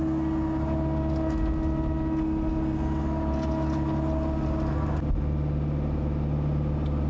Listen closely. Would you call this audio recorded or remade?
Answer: recorded